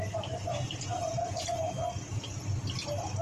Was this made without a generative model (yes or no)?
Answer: yes